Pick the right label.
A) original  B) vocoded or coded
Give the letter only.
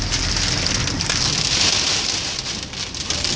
A